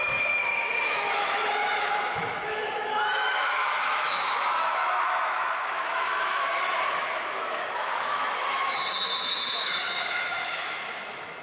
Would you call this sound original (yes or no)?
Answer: no